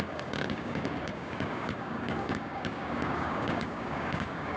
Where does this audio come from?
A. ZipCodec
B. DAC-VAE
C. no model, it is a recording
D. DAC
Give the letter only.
D